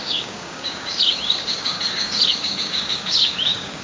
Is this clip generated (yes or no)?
yes